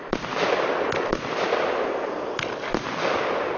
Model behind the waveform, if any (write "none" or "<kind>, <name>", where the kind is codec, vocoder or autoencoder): none